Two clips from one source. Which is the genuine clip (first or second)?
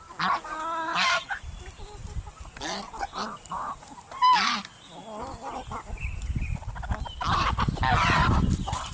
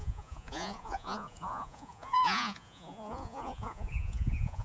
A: first